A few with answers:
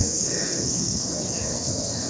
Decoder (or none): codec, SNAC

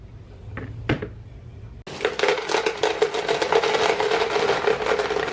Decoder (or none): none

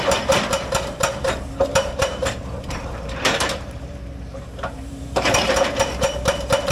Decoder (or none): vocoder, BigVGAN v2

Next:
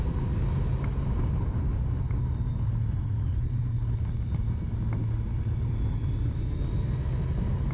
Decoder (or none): none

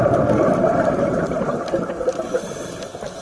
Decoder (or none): none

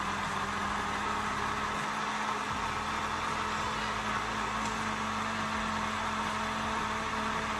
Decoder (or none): none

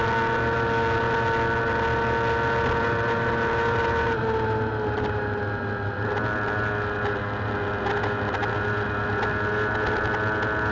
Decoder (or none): none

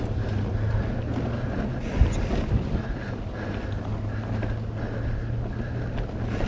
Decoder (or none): none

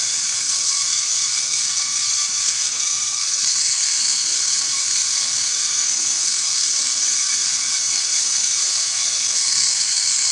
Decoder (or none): codec, SNAC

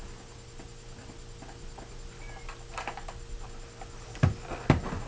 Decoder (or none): none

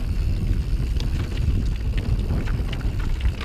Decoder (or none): none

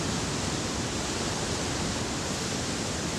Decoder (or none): none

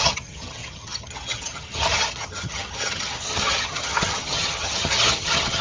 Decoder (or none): vocoder, HiFi-GAN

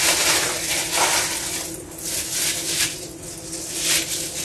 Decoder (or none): none